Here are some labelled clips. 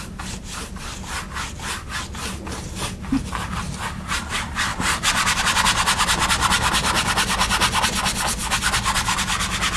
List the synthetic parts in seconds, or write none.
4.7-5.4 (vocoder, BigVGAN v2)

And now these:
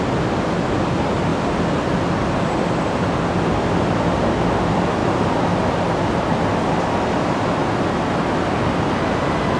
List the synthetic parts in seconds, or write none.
5.0-5.5 (vocoder, BigVGAN v2)

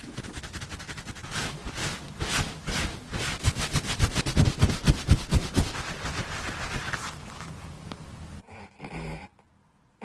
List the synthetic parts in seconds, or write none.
none

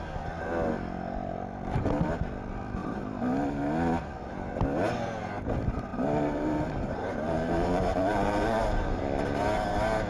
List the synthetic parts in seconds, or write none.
5.9-9.0 (vocoder, BigVGAN v2)

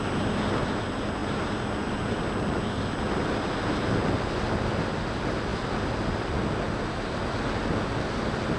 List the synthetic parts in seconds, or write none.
none

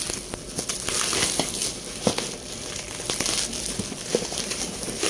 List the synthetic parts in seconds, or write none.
none